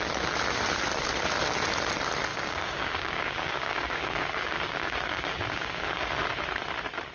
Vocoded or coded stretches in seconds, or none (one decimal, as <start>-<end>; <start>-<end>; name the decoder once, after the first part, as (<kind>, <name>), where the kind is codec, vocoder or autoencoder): 2.3-6.2 (codec, DAC)